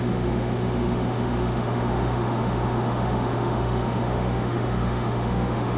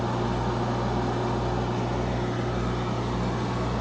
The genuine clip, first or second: second